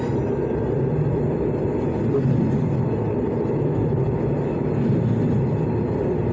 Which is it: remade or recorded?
recorded